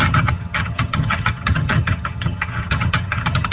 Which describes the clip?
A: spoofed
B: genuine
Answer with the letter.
A